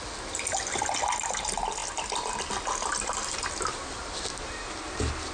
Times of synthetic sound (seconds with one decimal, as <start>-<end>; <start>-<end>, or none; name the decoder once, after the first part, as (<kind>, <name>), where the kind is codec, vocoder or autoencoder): none